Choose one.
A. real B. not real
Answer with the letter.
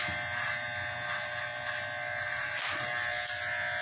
A